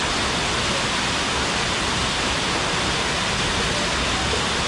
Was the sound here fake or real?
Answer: real